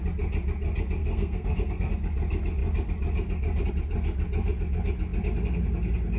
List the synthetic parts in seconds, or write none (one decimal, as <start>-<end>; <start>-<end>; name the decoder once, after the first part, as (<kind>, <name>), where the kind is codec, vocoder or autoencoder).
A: 1.0-1.9 (codec, SNAC)